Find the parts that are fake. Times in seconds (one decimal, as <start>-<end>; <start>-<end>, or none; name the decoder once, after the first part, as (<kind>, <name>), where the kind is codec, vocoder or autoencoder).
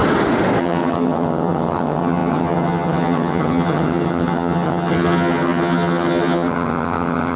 0.6-7.4 (vocoder, HiFi-GAN)